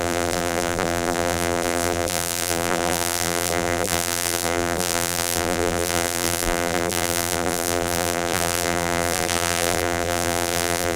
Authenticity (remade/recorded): remade